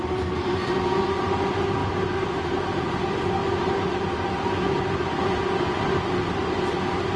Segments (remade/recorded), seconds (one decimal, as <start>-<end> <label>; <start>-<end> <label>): 0.0-1.8 recorded; 1.8-2.4 remade; 2.4-7.2 recorded